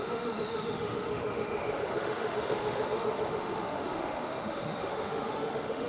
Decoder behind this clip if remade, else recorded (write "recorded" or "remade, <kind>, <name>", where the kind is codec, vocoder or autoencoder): remade, autoencoder, DAC-VAE